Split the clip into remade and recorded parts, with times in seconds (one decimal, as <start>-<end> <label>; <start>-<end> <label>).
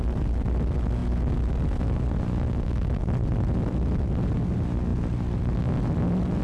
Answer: 0.0-6.4 recorded